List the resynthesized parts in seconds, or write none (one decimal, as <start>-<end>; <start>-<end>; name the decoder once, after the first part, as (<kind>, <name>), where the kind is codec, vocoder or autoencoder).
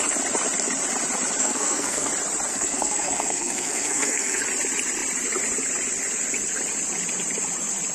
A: 1.4-2.1 (codec, SNAC); 2.5-4.4